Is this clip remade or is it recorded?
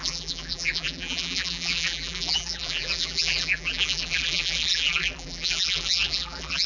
remade